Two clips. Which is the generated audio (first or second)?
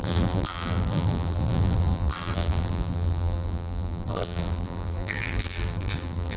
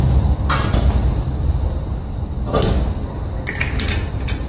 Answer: first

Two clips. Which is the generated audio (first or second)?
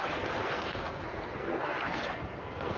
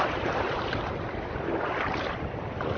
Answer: first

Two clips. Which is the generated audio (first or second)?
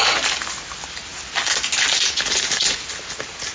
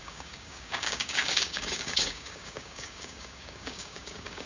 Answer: second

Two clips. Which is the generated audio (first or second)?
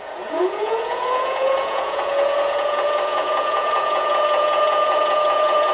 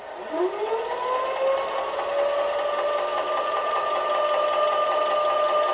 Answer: first